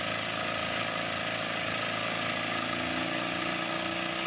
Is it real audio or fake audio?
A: real